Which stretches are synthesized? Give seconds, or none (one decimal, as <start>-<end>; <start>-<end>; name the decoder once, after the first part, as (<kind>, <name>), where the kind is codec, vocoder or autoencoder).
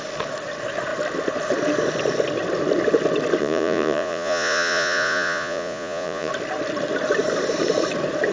3.4-6.3 (vocoder, Vocos)